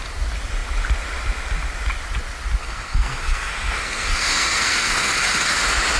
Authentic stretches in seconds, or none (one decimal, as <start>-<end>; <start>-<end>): 0.0-2.6; 5.6-6.0